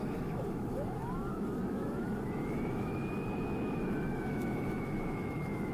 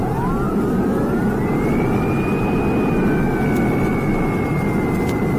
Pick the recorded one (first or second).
second